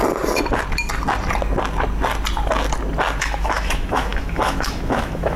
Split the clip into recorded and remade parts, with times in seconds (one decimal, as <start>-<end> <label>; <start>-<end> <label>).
0.0-3.2 recorded; 3.2-5.4 remade